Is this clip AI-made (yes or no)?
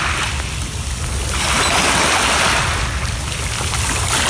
no